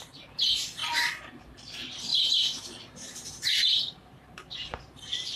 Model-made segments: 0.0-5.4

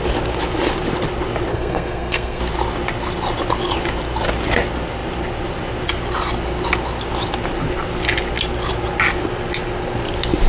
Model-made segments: 1.5-2.4

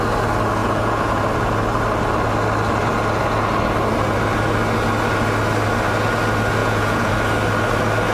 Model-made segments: 0.6-1.2; 6.6-7.1